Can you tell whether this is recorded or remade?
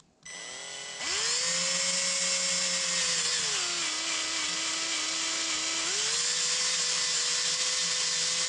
recorded